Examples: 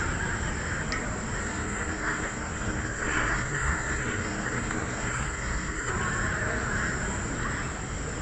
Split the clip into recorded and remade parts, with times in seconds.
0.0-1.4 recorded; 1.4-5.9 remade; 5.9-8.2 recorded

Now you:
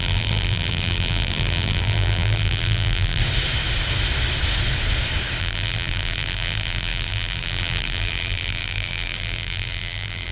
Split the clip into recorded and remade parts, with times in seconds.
0.0-3.2 remade; 3.2-5.4 recorded; 5.4-10.3 remade